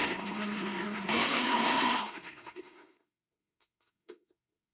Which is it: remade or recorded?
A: remade